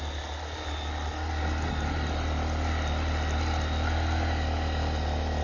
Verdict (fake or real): real